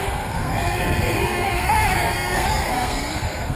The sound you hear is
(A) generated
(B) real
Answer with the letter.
A